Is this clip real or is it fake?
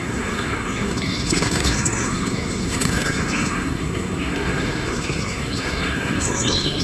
fake